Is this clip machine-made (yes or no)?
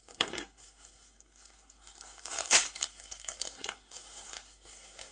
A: yes